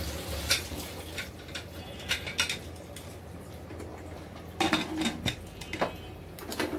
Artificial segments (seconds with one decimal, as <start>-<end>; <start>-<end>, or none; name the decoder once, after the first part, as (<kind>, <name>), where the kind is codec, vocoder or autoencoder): none